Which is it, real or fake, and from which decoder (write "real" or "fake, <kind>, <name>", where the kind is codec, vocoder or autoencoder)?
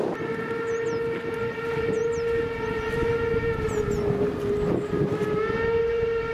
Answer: real